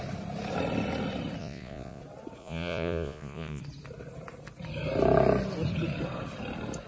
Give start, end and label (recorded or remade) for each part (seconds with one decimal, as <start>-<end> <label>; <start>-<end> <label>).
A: 0.0-1.4 recorded; 1.4-2.0 remade; 2.0-2.4 recorded; 2.4-3.6 remade; 3.6-6.9 recorded